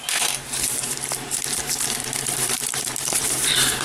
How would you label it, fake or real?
fake